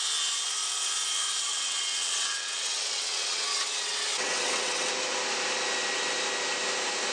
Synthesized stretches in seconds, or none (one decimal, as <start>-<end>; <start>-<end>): 1.5-4.9